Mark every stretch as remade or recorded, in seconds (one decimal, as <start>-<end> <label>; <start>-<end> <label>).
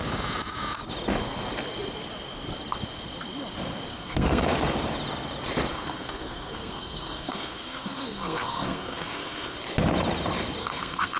0.0-3.9 recorded; 3.9-4.5 remade; 4.5-5.7 recorded; 5.7-9.6 remade; 9.6-10.6 recorded; 10.6-11.2 remade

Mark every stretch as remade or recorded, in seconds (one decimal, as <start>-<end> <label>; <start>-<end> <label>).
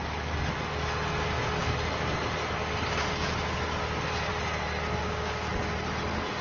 0.0-5.0 recorded; 5.0-5.5 remade; 5.5-6.4 recorded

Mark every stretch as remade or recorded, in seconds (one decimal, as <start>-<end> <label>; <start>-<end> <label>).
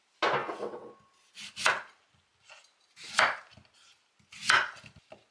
0.0-0.4 recorded; 0.4-0.9 remade; 0.9-5.3 recorded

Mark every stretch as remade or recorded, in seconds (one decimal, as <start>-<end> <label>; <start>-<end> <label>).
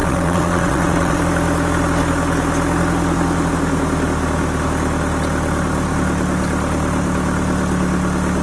0.0-1.2 remade; 1.2-8.4 recorded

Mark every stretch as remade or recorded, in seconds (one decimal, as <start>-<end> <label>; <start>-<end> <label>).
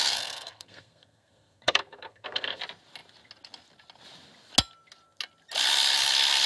0.0-2.6 remade; 2.6-6.5 recorded